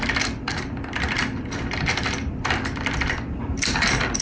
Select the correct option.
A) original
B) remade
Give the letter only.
B